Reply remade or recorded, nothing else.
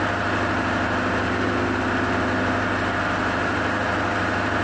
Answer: recorded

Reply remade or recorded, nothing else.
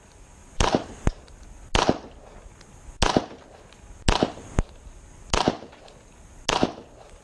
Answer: recorded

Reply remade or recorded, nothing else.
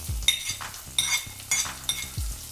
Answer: recorded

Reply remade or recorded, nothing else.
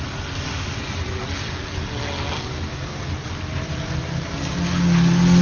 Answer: recorded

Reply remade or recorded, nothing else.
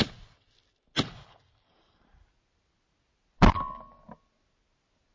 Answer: recorded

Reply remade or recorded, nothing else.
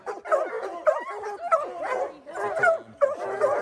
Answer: recorded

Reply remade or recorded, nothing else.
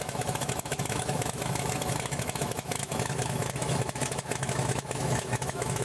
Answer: remade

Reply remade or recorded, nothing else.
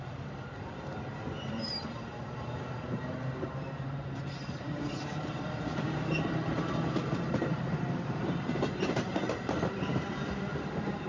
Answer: remade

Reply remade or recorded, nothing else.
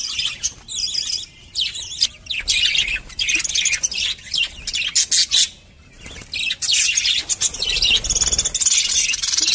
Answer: recorded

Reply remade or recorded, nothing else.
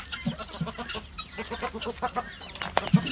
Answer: recorded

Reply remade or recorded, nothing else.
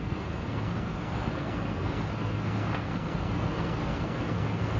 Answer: remade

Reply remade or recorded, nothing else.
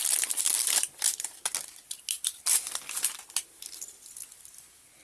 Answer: recorded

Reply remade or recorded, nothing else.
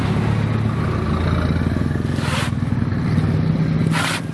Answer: recorded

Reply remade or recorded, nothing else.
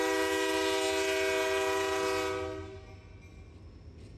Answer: recorded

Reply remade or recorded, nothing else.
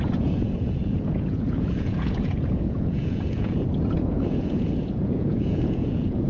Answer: remade